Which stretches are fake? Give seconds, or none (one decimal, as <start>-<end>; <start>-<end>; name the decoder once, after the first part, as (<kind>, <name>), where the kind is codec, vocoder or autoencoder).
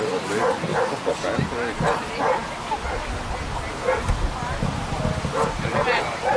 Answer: none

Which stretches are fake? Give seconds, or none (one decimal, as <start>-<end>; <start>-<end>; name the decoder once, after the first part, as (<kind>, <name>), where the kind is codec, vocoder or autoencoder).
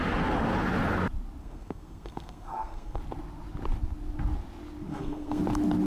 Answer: 1.4-3.0 (codec, SNAC); 4.9-5.4